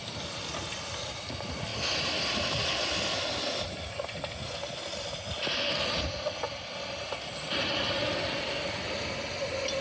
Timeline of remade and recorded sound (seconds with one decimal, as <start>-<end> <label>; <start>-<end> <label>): 0.0-9.8 recorded